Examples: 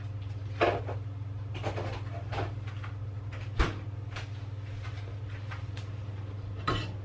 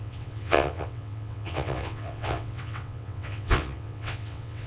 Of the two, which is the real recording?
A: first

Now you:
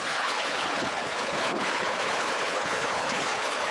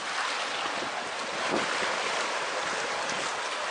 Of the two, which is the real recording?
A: second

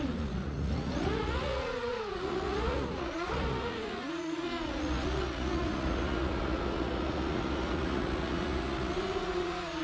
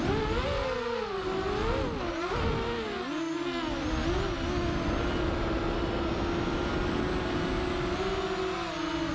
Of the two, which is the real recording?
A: second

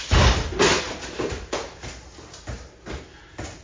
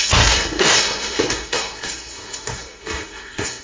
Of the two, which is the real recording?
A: first